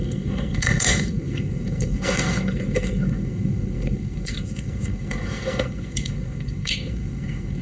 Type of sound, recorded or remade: remade